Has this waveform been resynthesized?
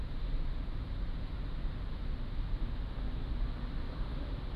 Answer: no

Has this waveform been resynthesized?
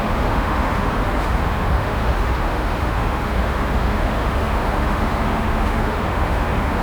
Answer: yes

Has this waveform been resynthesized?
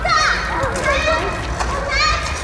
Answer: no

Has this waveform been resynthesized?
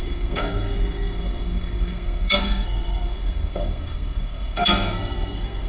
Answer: yes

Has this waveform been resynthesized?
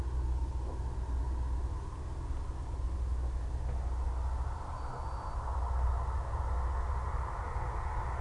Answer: no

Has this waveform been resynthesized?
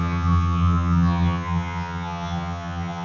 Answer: yes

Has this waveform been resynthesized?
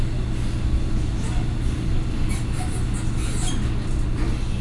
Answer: no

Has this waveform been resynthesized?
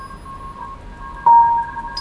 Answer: no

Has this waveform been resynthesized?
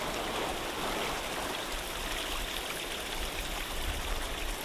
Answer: yes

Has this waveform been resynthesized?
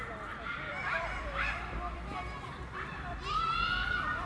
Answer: yes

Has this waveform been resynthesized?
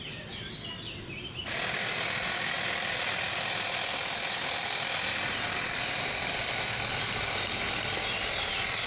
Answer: no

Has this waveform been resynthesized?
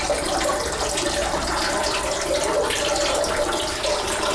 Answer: no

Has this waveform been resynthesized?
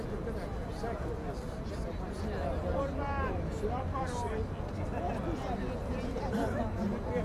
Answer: no